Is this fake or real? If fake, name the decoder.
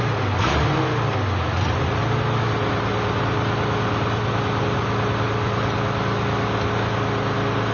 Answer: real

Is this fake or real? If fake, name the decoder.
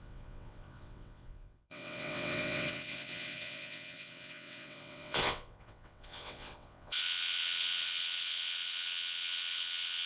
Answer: fake, vocoder, WaveNeXt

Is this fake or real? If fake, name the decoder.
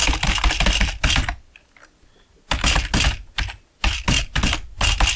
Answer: real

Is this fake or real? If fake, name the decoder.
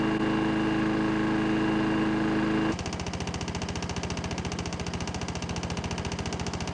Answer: real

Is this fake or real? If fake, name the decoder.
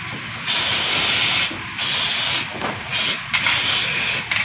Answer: real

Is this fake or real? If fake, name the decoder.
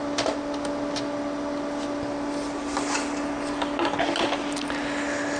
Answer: real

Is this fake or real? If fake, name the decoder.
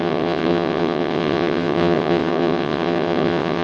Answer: fake, vocoder, WaveNeXt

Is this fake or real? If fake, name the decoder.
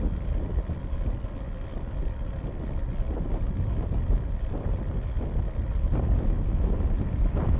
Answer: real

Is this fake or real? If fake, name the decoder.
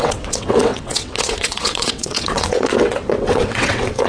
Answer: fake, vocoder, WaveNeXt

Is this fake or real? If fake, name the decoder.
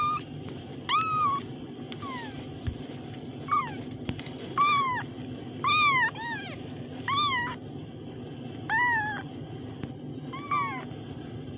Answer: real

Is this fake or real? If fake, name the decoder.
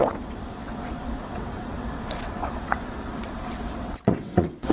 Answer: fake, vocoder, WaveNeXt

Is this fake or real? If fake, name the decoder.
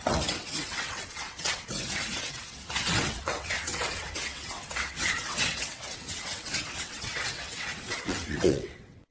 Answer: fake, vocoder, WaveNeXt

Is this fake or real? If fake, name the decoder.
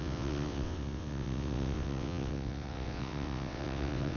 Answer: fake, vocoder, WaveNeXt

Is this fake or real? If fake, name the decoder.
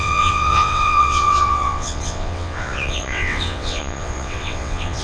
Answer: fake, vocoder, WaveNeXt